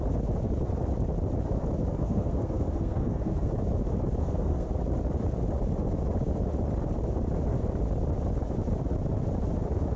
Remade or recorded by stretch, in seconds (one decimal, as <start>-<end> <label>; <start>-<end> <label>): 0.0-1.9 recorded; 1.9-3.5 remade; 3.5-4.2 recorded; 4.2-4.8 remade; 4.8-10.0 recorded

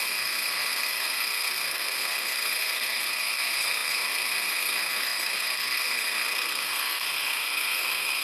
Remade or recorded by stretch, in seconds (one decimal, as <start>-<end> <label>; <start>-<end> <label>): 0.0-8.2 remade

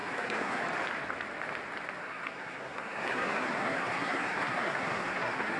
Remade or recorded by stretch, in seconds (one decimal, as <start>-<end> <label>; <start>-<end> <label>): 0.0-0.6 remade; 0.6-2.0 recorded; 2.0-5.6 remade